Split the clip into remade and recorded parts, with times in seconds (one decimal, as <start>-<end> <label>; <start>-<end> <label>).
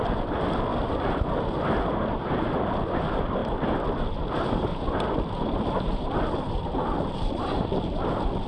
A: 0.0-3.4 recorded; 3.4-5.1 remade; 5.1-8.5 recorded